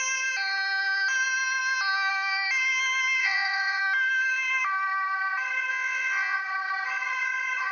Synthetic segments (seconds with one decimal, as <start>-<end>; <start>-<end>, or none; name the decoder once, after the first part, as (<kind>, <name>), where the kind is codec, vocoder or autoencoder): 3.2-3.8 (vocoder, Vocos); 5.7-6.4